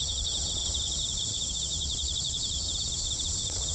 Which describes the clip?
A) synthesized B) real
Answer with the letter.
A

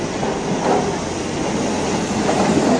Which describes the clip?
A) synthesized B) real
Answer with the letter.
B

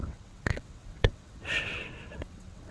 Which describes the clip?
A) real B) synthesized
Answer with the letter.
B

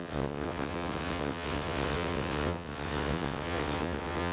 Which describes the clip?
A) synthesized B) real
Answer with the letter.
A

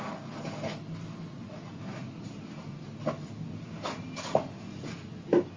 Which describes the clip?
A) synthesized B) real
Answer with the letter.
B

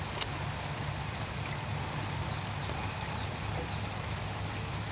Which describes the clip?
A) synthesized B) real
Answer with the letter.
B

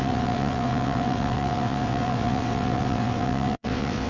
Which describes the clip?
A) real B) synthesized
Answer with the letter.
B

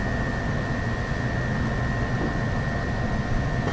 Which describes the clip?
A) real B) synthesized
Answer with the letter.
A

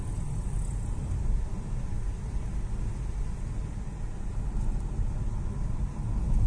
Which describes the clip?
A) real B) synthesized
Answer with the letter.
A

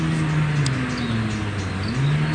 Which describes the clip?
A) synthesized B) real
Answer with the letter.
B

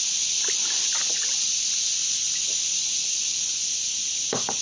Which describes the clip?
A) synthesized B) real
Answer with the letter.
B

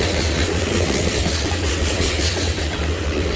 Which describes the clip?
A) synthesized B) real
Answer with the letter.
A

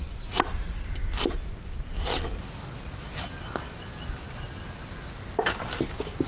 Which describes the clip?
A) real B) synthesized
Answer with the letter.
A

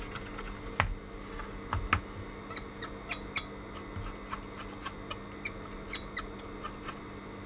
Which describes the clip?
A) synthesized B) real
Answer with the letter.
B